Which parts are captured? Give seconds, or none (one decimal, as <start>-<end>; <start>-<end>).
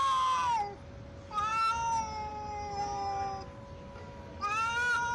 0.0-5.1